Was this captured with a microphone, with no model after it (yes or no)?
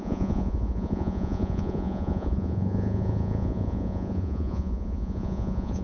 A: no